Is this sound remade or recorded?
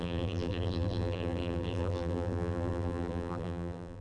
remade